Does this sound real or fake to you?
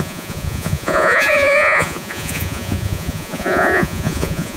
fake